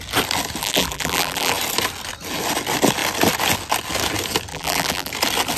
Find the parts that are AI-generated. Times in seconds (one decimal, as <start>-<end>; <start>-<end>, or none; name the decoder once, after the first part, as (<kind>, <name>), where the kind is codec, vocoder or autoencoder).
0.6-1.5 (vocoder, BigVGAN v2); 4.5-5.1